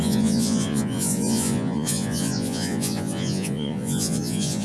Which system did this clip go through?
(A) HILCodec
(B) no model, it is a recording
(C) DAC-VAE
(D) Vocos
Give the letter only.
D